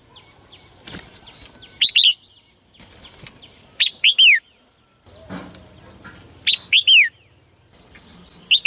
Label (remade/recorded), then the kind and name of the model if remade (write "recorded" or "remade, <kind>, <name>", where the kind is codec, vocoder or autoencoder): recorded